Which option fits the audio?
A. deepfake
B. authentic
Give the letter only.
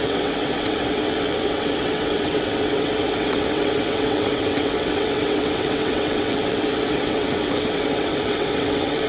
A